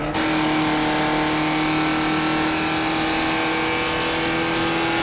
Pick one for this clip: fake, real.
real